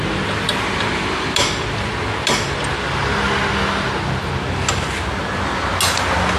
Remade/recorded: recorded